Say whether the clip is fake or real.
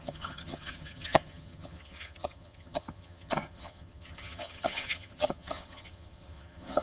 fake